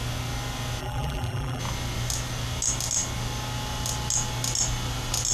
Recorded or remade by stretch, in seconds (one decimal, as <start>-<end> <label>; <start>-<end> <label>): 0.0-0.8 recorded; 0.8-1.6 remade; 1.6-5.3 recorded